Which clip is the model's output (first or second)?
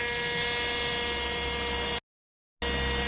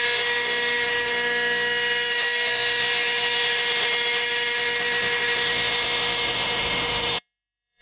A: second